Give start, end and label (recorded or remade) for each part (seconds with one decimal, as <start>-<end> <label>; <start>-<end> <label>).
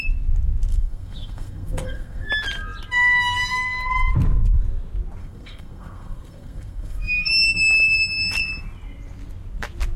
0.0-0.7 recorded; 0.7-2.3 remade; 2.3-5.2 recorded; 5.2-7.3 remade; 7.3-10.0 recorded